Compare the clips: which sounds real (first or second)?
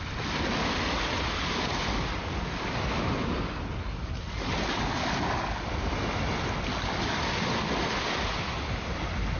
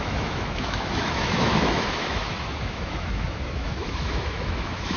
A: first